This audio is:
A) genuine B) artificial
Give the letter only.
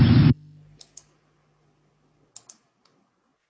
A